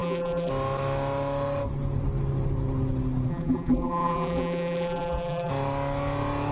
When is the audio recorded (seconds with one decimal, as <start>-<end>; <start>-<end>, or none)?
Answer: 0.5-3.3; 5.5-6.5